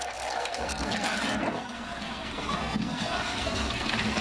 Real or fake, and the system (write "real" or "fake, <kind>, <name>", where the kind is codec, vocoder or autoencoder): fake, codec, SNAC